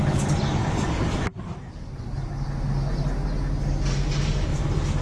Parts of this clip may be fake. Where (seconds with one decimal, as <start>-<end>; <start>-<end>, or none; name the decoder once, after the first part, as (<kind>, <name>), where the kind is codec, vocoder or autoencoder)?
0.6-2.2 (vocoder, BigVGAN v2); 4.5-5.0